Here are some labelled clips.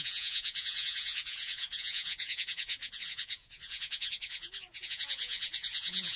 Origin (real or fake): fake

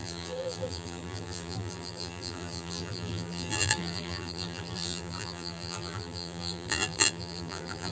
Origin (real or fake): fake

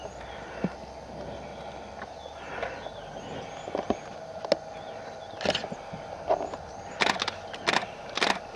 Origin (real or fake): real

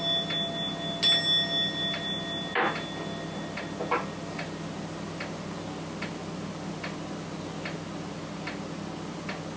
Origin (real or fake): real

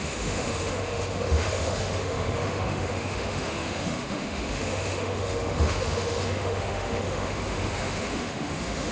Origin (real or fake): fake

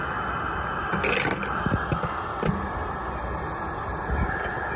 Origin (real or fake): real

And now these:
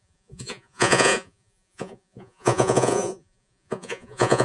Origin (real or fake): fake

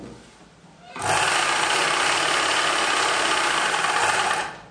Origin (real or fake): real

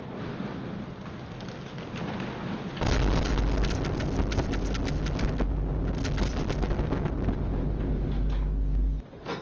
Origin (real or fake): real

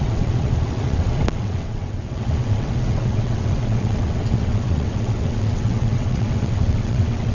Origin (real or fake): fake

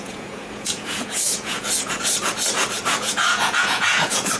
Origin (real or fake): fake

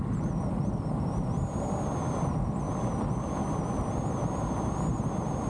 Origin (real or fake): real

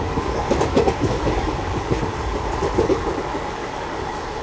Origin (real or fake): fake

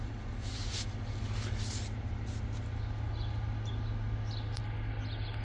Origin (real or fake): real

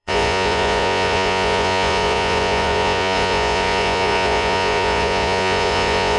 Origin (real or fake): fake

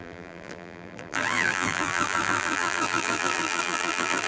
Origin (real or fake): fake